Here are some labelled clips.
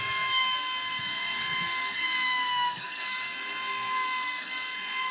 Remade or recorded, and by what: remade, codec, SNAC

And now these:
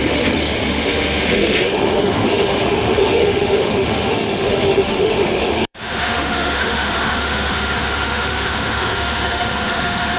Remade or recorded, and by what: remade, autoencoder, DAC-VAE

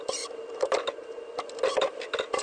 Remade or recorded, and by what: remade, vocoder, BigVGAN v2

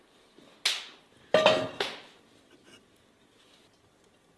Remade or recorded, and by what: recorded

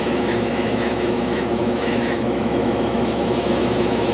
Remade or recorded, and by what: remade, autoencoder, DAC-VAE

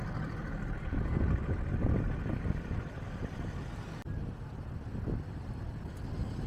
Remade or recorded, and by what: recorded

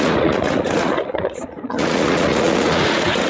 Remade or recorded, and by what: remade, vocoder, Vocos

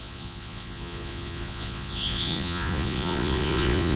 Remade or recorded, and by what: remade, vocoder, Vocos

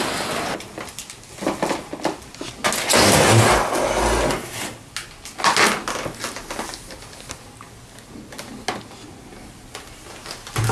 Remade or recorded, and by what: recorded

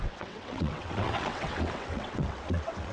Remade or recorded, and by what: remade, vocoder, WaveNeXt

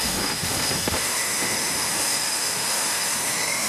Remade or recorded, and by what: remade, autoencoder, DAC-VAE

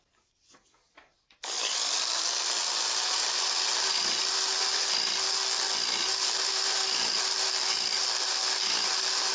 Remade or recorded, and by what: recorded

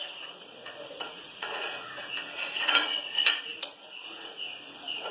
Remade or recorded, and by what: remade, vocoder, Vocos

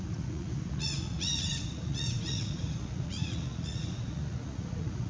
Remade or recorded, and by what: remade, vocoder, Vocos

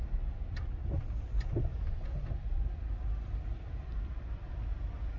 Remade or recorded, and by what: recorded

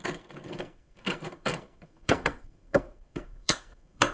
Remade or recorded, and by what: remade, codec, SNAC